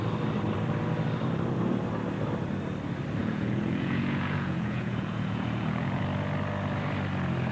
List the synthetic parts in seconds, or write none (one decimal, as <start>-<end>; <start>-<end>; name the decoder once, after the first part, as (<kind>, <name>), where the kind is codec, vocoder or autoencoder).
3.2-6.0 (vocoder, Vocos)